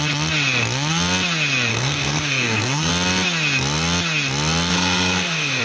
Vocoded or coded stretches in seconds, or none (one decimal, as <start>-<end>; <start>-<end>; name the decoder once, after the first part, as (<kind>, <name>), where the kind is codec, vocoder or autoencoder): 1.7-2.9 (codec, SNAC); 4.7-5.6